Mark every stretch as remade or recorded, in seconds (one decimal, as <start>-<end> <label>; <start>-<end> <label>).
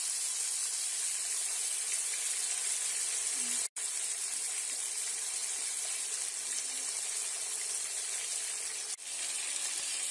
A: 0.0-10.1 recorded